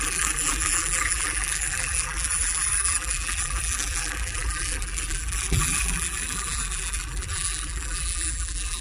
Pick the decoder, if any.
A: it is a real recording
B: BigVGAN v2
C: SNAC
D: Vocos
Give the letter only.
B